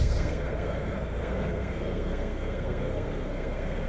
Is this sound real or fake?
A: fake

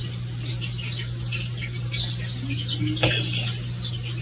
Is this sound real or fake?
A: real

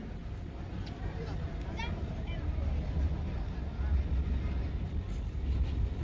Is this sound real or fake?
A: real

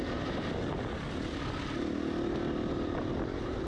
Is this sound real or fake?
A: real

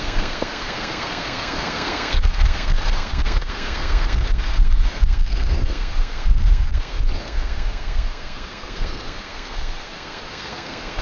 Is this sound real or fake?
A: fake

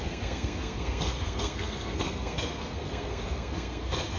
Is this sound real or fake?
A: fake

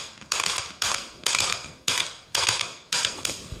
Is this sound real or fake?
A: fake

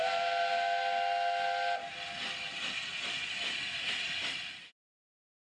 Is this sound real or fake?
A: real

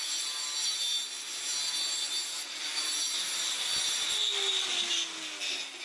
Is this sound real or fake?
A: real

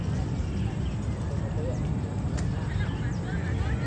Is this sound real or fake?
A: real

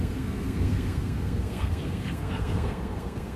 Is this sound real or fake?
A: fake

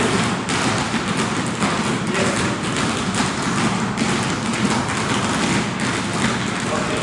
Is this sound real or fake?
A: real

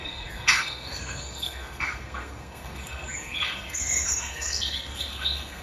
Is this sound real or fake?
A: fake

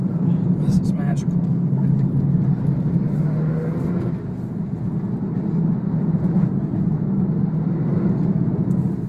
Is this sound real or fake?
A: real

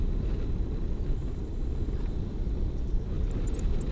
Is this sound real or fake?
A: real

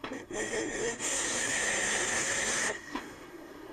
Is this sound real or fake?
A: fake